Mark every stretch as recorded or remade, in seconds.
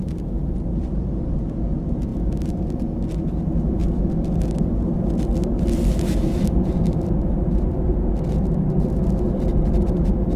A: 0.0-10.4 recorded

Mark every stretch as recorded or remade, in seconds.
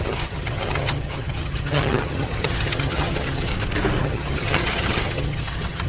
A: 0.0-3.5 remade; 3.5-4.0 recorded; 4.0-5.9 remade